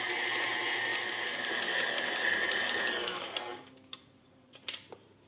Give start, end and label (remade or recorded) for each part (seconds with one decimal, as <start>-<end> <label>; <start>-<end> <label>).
0.0-0.9 remade; 0.9-3.9 recorded; 3.9-5.3 remade